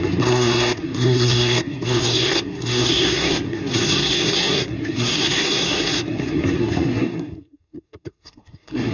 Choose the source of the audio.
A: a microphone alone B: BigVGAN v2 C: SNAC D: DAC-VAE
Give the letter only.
C